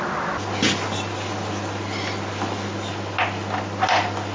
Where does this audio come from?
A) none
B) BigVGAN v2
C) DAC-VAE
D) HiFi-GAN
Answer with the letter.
A